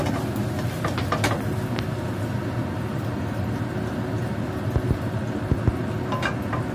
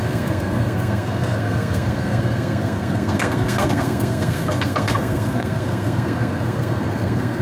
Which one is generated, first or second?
second